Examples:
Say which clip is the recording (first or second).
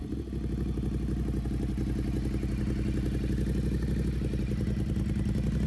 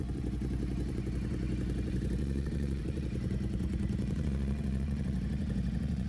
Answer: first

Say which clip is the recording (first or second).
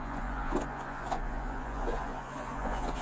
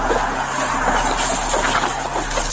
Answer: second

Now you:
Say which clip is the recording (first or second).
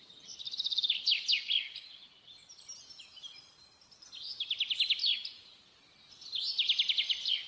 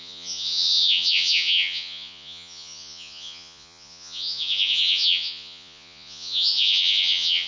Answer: first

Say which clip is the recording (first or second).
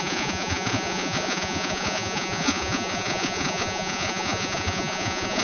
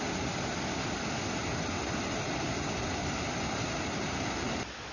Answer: second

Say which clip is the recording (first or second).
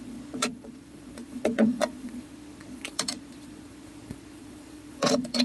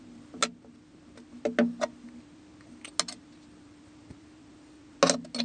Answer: second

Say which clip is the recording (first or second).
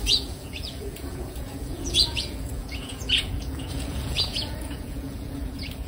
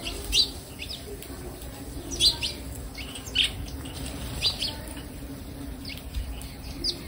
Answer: second